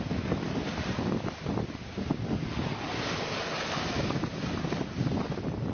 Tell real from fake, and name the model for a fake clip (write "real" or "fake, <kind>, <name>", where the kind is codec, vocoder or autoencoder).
real